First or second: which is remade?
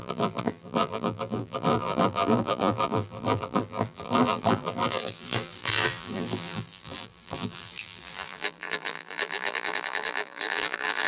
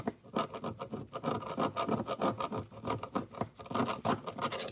first